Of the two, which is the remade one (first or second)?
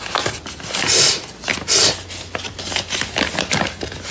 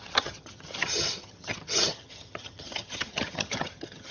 second